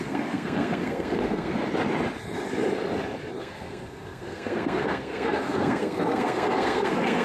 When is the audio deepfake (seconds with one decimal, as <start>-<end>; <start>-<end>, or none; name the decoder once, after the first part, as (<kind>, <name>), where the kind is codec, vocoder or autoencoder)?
0.0-1.6 (codec, SNAC); 3.4-7.2